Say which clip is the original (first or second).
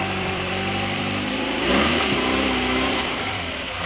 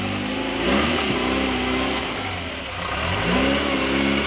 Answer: second